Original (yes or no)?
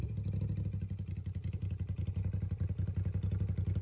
yes